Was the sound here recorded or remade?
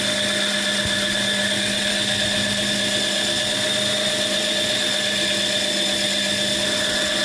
recorded